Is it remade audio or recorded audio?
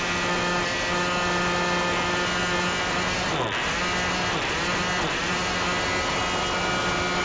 recorded